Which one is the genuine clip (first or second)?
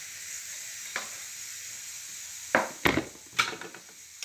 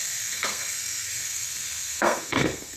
first